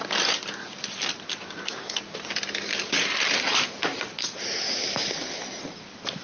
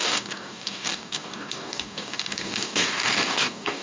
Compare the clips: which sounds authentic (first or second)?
first